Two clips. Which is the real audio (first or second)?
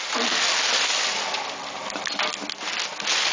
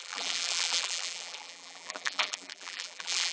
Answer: first